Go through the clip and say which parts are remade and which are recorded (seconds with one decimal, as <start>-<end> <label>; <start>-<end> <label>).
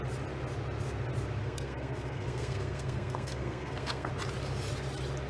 0.0-1.4 recorded; 1.4-4.1 remade; 4.1-5.3 recorded